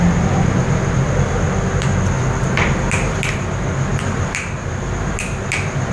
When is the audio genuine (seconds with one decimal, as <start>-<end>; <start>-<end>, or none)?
0.0-5.9